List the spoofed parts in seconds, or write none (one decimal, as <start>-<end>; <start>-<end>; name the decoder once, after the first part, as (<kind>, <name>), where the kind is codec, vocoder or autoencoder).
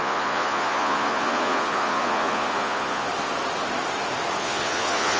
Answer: 0.0-3.1 (vocoder, Vocos); 4.4-5.2